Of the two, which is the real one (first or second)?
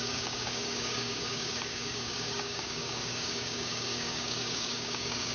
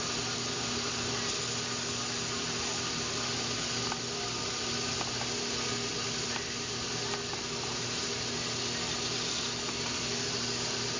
second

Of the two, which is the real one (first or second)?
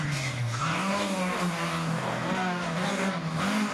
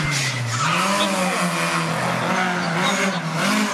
second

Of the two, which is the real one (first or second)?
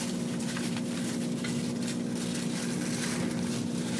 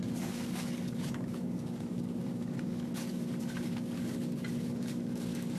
first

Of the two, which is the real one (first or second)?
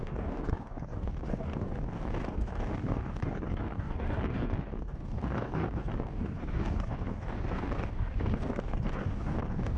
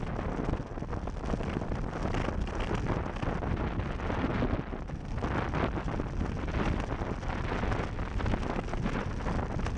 second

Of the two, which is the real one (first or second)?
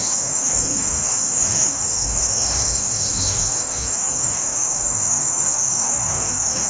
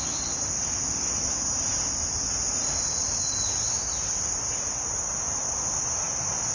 second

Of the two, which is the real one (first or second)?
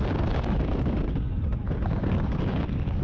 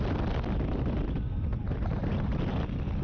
second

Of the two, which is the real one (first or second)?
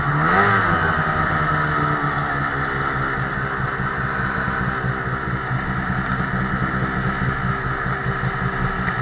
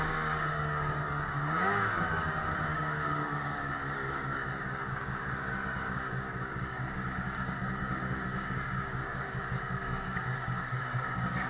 first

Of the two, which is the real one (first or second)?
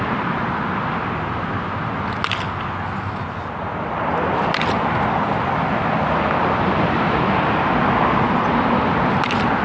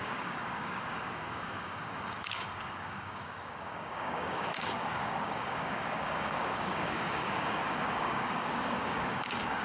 first